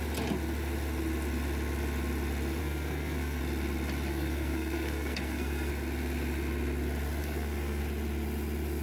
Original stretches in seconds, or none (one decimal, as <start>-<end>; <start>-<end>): 0.0-2.6; 3.4-4.1; 5.7-7.2; 7.8-8.8